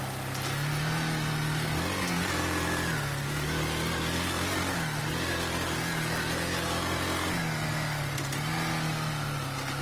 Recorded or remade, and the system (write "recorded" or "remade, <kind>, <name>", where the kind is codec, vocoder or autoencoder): recorded